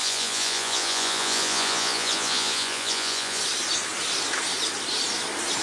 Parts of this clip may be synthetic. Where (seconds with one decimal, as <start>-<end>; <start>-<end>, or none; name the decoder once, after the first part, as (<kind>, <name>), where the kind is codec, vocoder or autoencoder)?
0.0-3.4 (vocoder, Vocos)